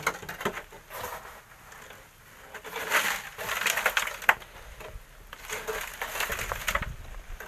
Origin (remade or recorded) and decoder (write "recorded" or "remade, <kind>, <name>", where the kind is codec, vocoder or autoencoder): recorded